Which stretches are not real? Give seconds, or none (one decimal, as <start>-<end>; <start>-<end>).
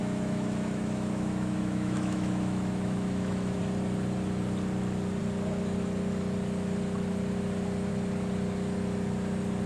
0.0-3.6